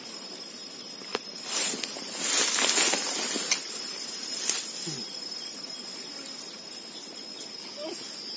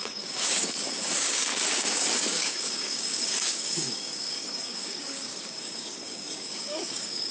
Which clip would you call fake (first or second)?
second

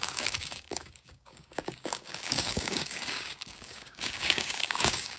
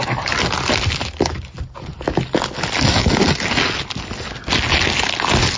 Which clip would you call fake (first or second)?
first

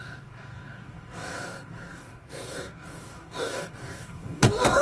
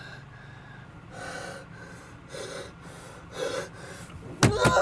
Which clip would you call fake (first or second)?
first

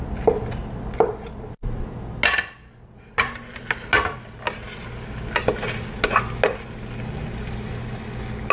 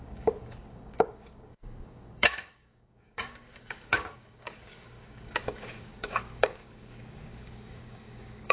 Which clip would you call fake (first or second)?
second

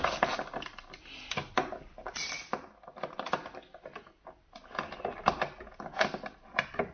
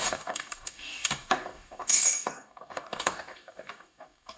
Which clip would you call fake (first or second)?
second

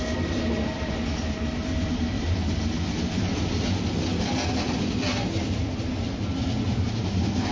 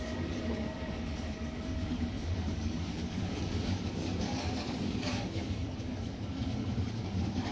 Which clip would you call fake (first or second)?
second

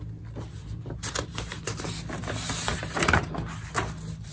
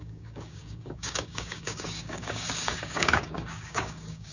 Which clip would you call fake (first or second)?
second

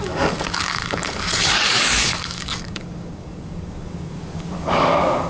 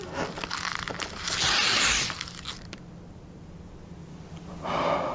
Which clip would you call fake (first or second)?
first